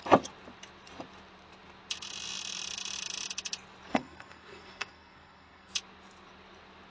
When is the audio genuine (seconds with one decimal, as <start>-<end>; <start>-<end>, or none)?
0.0-3.9; 5.7-6.9